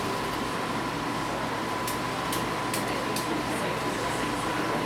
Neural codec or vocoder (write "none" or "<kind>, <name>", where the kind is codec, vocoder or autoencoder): vocoder, BigVGAN v2